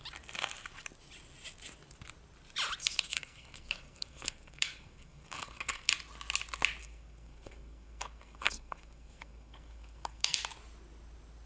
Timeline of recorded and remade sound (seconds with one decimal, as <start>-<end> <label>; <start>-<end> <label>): 0.0-2.8 recorded; 2.8-5.9 remade; 5.9-6.8 recorded; 6.8-10.4 remade; 10.4-11.5 recorded